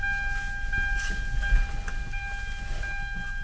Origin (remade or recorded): recorded